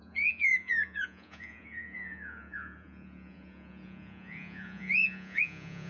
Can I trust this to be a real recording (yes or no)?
no